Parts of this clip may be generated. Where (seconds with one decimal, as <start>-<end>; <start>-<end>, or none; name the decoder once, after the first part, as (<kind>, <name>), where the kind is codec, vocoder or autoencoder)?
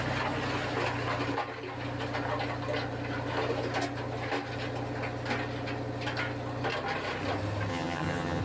7.7-8.4 (vocoder, HiFi-GAN)